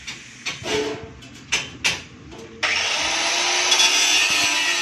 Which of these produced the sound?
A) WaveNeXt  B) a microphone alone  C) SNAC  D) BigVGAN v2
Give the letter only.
B